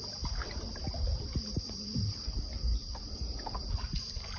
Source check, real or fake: fake